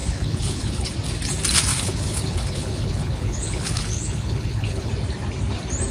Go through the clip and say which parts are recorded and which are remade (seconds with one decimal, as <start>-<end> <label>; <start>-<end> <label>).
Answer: 0.0-0.9 remade; 0.9-1.7 recorded; 1.7-4.9 remade; 4.9-5.9 recorded